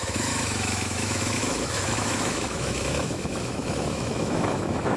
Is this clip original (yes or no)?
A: no